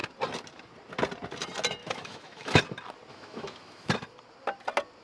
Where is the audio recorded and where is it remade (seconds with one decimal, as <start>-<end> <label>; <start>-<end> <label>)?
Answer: 0.0-1.8 recorded; 1.8-2.6 remade; 2.6-3.1 recorded; 3.1-3.9 remade; 3.9-5.0 recorded